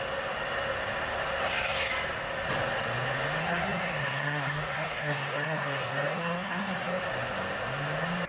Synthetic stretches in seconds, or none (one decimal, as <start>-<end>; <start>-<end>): 1.4-1.9; 3.4-7.0